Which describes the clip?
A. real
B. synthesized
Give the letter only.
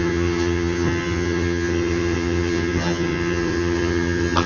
B